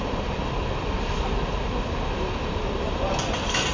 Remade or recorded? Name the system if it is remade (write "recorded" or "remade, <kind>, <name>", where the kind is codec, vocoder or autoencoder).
remade, vocoder, BigVGAN v2